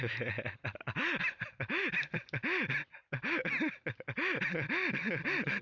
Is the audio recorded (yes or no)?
yes